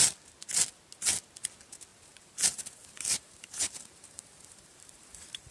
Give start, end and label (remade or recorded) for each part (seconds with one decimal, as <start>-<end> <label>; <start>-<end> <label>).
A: 0.0-1.9 recorded; 1.9-5.5 remade